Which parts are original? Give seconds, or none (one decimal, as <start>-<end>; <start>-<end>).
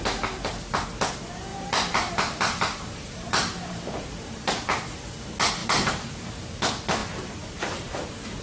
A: 0.0-1.5; 4.5-5.6; 6.3-7.0